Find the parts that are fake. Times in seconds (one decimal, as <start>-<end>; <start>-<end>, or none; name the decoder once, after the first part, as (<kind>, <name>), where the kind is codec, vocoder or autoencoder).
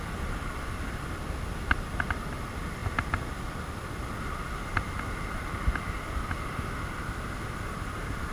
none